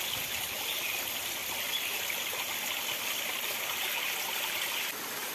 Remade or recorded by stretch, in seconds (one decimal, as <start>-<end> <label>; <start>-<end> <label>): 0.0-5.3 recorded